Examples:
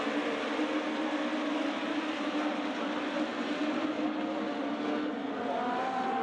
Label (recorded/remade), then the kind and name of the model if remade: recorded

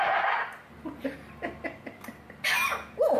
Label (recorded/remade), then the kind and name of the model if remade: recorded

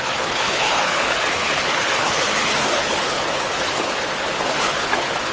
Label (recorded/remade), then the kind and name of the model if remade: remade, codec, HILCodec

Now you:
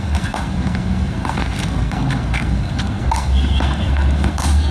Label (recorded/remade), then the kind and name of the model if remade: remade, codec, SNAC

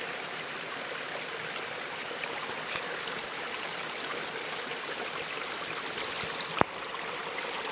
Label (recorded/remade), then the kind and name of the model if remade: recorded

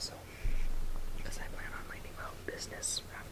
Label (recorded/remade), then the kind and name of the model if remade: recorded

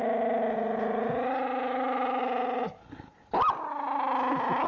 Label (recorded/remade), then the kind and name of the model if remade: recorded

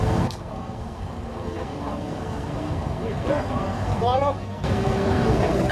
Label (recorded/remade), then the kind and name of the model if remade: remade, codec, SNAC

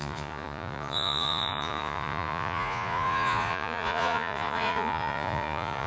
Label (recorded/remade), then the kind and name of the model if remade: remade, vocoder, Vocos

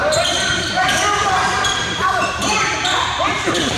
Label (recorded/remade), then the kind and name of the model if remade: remade, vocoder, BigVGAN v2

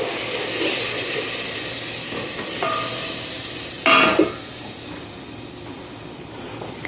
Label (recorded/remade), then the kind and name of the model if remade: recorded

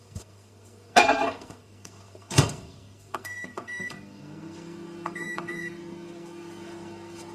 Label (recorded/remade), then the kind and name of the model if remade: remade, codec, SNAC